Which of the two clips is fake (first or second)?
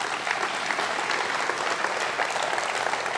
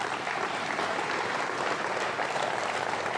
second